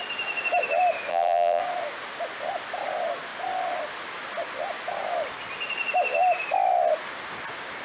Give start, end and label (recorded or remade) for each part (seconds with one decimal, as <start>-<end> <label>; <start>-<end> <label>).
0.0-1.1 recorded; 1.1-1.6 remade; 1.6-7.8 recorded